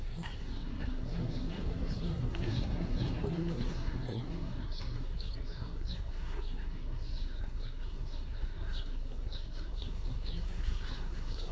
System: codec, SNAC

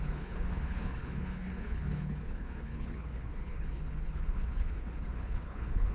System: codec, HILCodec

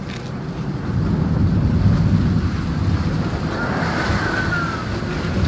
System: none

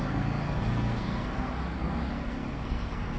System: codec, SNAC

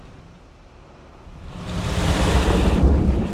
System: none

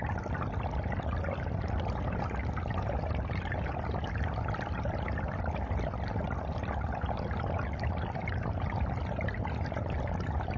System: none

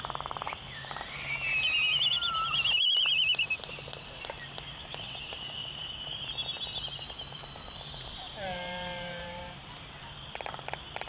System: vocoder, BigVGAN v2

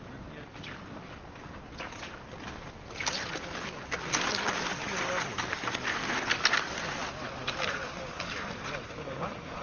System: none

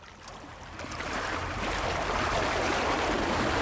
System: none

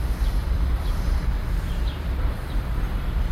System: vocoder, BigVGAN v2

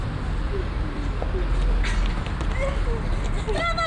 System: none